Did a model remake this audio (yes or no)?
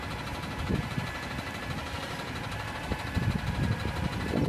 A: no